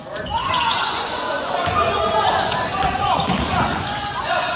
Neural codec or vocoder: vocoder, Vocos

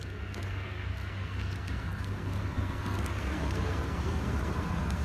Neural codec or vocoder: codec, SNAC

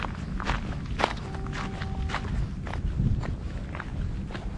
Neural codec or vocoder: none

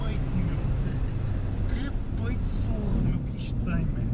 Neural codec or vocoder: none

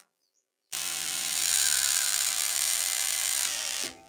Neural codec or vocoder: vocoder, BigVGAN v2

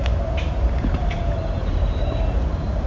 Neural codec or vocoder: vocoder, BigVGAN v2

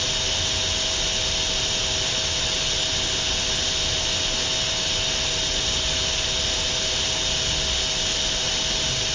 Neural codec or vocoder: none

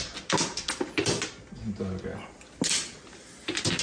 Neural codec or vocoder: none